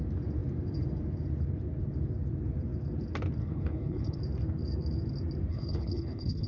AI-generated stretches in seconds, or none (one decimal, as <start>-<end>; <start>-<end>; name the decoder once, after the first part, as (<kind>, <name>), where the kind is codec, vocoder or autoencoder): 3.4-4.2 (codec, HILCodec); 5.5-6.5